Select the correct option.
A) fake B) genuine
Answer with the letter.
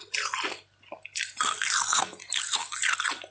B